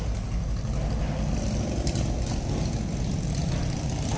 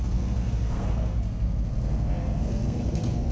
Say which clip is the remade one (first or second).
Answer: second